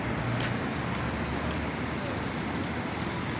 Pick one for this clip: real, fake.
real